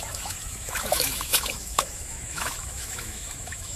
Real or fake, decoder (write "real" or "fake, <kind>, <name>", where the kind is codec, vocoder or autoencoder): fake, autoencoder, DAC-VAE